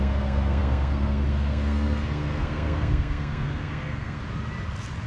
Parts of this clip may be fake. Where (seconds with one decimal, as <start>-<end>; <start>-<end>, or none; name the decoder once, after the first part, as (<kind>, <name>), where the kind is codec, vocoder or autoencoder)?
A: 0.0-4.2 (codec, SNAC)